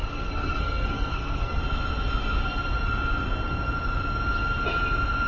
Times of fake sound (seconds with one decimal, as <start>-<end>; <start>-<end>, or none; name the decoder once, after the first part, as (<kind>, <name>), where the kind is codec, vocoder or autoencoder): 0.0-1.6 (codec, SNAC)